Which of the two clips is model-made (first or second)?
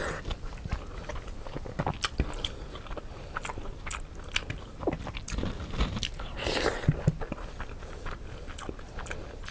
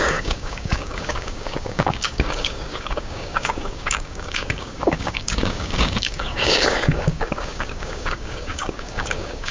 second